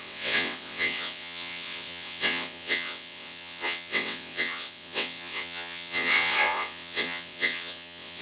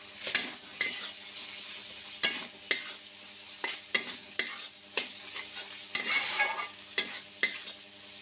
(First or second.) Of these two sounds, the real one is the second